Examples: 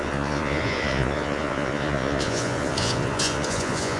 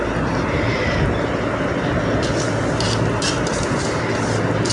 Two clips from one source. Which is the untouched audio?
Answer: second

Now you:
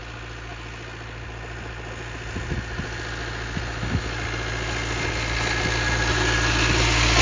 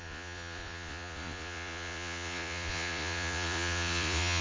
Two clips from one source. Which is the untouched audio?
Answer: first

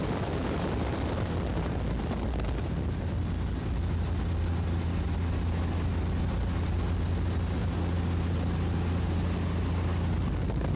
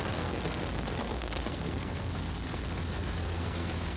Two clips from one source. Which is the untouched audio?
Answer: first